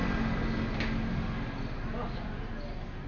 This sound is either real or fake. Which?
real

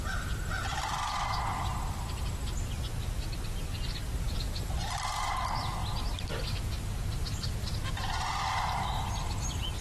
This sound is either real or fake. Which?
real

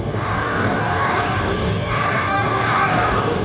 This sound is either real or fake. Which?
fake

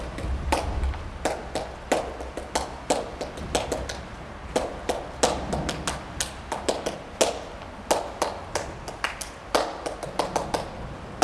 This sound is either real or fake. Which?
real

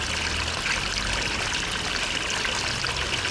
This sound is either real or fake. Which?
real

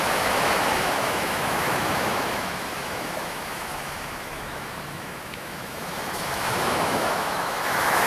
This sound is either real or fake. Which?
fake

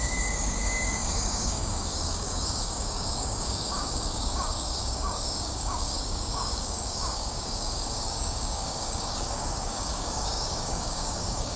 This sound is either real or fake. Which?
fake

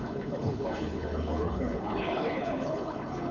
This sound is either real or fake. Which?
fake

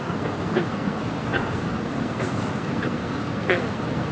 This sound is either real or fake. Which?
fake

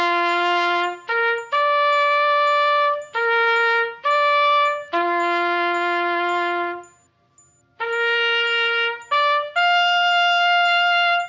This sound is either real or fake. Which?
real